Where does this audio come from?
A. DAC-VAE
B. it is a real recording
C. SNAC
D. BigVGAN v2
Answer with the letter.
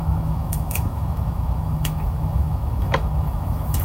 A